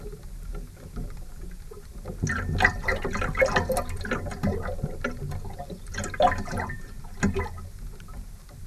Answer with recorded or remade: recorded